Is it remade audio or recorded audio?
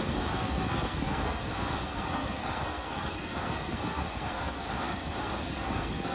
remade